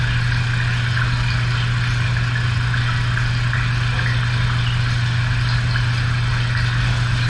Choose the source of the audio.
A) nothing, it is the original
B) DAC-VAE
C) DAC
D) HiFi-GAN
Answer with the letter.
A